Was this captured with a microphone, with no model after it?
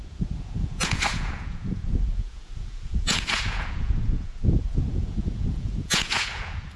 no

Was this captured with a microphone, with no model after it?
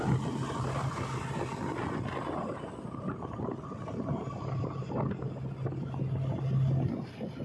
yes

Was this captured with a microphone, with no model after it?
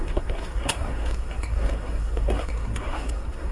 no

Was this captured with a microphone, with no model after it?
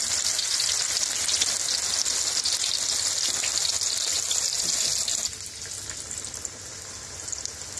yes